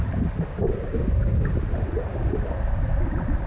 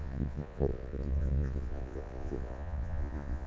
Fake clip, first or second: second